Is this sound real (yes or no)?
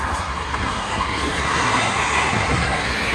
no